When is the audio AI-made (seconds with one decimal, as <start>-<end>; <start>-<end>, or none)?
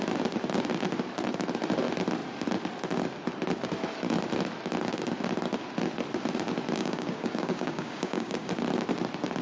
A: 6.8-8.5